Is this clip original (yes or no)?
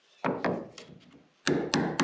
yes